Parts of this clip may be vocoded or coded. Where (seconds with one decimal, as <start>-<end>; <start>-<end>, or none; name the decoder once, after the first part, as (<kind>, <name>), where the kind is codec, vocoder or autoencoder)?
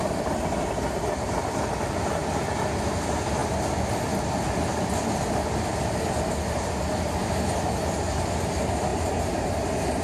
8.9-9.6 (vocoder, BigVGAN v2)